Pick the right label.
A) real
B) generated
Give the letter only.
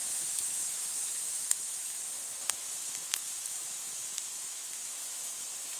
B